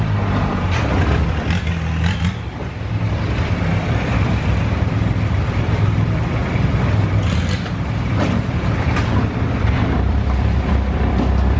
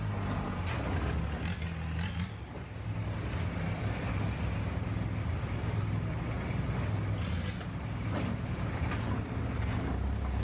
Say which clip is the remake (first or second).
first